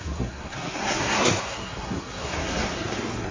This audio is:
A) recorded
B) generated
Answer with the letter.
B